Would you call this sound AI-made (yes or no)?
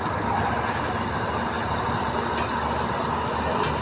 no